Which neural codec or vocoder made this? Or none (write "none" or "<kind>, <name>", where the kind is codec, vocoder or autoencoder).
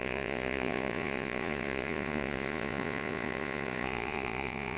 vocoder, Vocos